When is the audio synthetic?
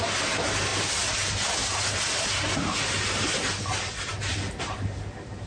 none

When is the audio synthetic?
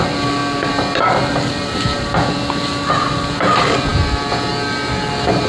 none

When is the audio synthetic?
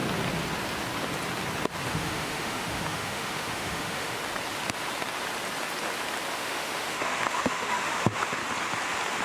1.9-4.2 (autoencoder, DAC-VAE); 6.3-8.4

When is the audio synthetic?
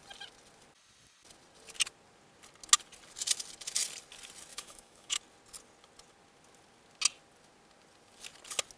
4.5-5.2 (autoencoder, DAC-VAE)